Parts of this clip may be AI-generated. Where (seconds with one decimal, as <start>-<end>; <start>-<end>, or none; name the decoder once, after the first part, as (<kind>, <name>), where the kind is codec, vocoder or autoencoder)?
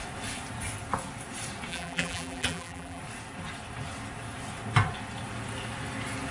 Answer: 1.7-3.0 (vocoder, BigVGAN v2)